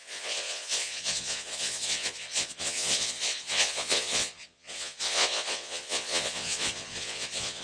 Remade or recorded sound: remade